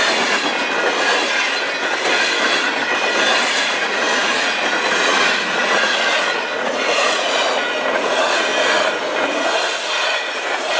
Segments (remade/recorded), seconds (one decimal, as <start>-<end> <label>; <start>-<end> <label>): 0.0-0.5 remade; 0.5-3.4 recorded; 3.4-8.5 remade; 8.5-9.2 recorded; 9.2-10.8 remade